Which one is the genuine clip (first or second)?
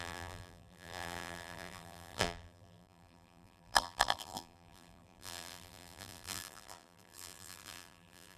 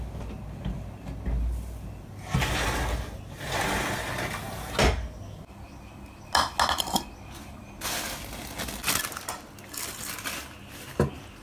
second